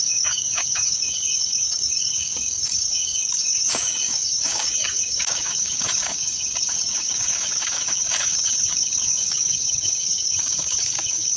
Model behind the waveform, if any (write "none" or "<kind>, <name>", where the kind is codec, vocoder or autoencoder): codec, DAC